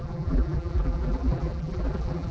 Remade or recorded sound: remade